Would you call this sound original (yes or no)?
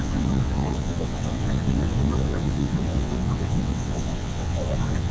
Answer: no